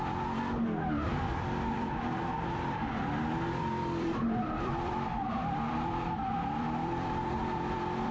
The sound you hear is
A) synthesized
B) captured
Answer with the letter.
A